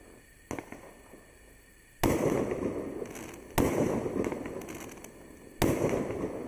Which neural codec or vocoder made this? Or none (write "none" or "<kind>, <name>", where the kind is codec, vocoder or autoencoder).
none